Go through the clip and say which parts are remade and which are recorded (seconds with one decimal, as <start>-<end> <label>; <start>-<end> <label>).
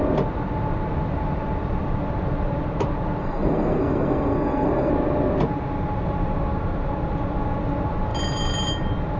0.0-3.2 recorded; 3.2-4.9 remade; 4.9-9.2 recorded